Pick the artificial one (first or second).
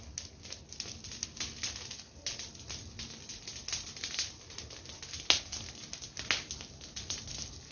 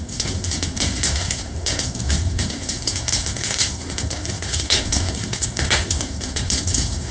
second